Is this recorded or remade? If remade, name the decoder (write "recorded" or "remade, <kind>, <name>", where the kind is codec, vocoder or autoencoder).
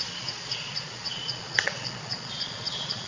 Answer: remade, vocoder, Vocos